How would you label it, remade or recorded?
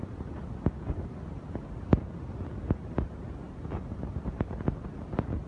recorded